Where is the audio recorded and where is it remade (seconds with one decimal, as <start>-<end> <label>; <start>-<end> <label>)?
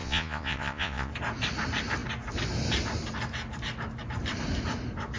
0.0-1.1 remade; 1.1-5.2 recorded